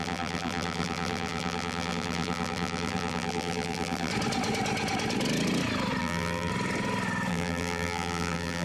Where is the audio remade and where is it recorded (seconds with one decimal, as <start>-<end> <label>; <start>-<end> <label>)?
0.0-4.1 remade; 4.1-6.0 recorded; 6.0-6.5 remade; 6.5-7.3 recorded; 7.3-8.6 remade